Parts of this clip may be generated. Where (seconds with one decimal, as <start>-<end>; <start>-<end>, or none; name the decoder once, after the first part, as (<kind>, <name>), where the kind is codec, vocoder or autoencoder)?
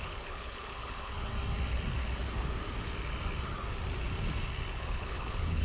0.0-1.3 (codec, HILCodec); 4.7-5.6